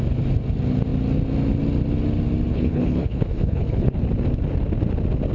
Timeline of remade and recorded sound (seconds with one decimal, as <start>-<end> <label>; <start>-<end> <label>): 0.0-2.5 recorded; 2.5-4.0 remade; 4.0-5.3 recorded